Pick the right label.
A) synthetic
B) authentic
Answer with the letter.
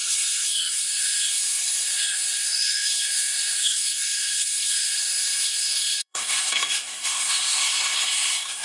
A